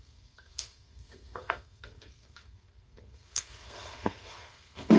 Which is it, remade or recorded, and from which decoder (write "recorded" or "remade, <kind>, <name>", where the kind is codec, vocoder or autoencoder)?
remade, codec, SNAC